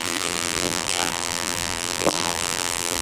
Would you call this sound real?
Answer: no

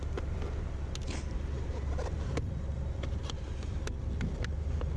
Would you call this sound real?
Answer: yes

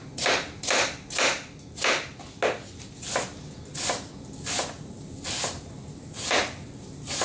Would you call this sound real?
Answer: yes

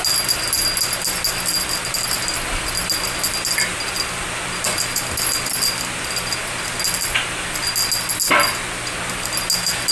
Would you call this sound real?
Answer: yes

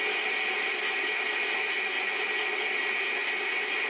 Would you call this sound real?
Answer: yes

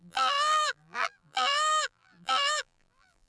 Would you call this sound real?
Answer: no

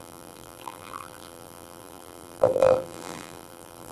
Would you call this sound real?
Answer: no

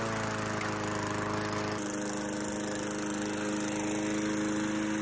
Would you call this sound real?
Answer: yes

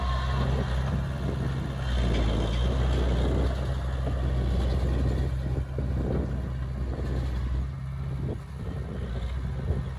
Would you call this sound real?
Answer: yes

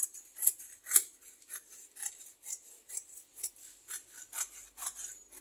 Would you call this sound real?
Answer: no